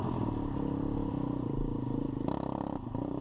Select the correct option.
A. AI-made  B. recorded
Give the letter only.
B